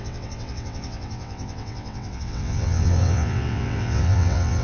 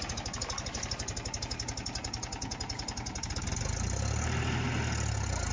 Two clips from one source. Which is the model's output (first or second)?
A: first